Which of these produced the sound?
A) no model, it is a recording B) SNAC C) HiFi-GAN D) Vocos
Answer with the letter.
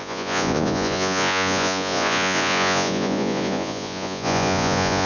D